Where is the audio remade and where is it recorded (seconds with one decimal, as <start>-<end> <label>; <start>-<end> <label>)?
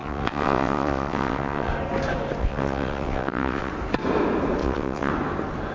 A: 0.0-1.7 remade; 1.7-2.4 recorded; 2.4-3.7 remade; 3.7-4.6 recorded; 4.6-5.1 remade; 5.1-5.7 recorded